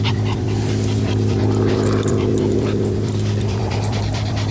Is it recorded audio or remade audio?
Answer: remade